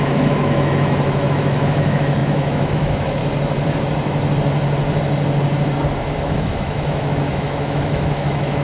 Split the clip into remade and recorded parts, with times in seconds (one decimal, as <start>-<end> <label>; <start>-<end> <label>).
0.0-3.2 remade; 3.2-6.2 recorded; 6.2-8.6 remade